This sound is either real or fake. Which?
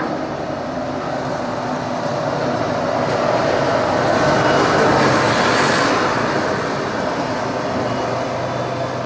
real